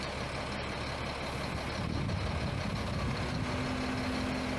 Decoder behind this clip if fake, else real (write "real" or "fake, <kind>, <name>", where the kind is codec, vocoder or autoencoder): real